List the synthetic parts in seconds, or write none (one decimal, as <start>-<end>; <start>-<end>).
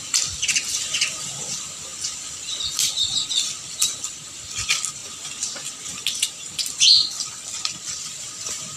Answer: 0.0-5.0; 6.6-8.8